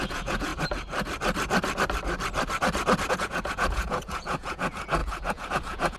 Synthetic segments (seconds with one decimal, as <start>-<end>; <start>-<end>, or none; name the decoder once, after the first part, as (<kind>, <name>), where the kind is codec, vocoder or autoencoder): 0.0-0.5 (vocoder, Vocos); 3.1-6.0